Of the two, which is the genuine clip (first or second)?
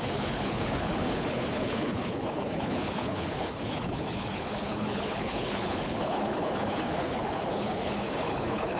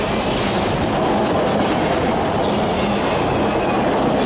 second